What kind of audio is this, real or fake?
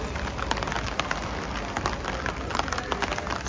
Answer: real